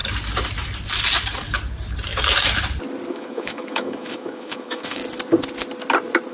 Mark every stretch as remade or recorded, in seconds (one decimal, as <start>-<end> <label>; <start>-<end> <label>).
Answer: 0.0-3.1 recorded; 3.1-5.0 remade; 5.0-6.3 recorded